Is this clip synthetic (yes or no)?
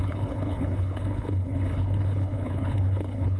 yes